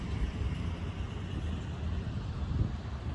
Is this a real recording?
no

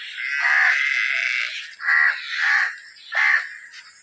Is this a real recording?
yes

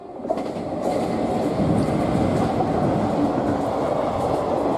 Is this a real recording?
yes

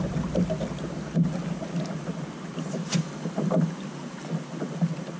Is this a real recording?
yes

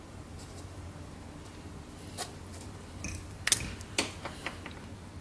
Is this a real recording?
yes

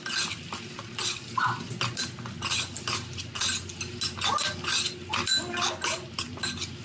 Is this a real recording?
yes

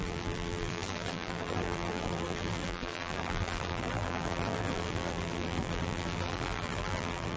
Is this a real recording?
no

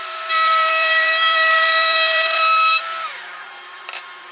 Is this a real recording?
no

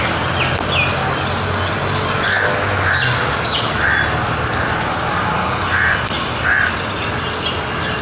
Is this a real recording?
yes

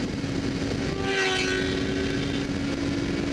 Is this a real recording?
yes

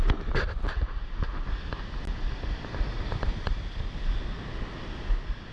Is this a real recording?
yes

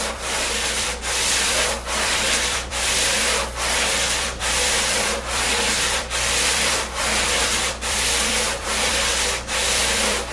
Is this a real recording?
no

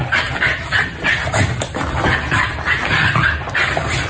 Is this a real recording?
no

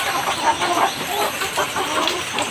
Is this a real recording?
yes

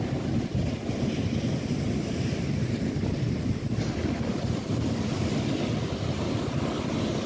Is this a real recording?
yes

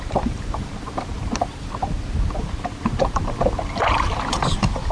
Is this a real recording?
no